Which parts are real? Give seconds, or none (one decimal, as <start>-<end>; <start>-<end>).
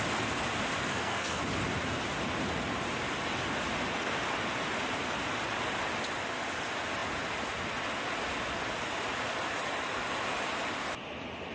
0.0-0.8; 1.4-11.5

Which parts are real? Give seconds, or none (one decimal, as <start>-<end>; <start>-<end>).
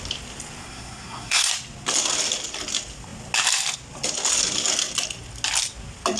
0.0-0.6; 1.5-6.2